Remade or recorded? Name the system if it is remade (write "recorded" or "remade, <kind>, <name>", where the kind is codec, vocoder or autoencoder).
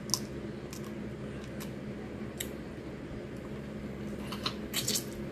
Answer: recorded